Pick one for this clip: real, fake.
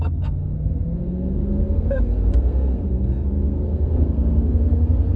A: fake